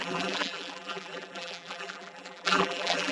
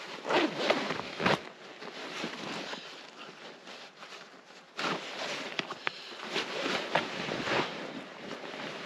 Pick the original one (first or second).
second